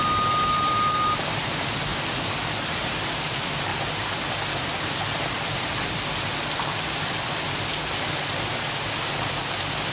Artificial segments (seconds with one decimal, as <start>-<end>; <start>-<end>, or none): 1.9-2.6; 5.1-9.3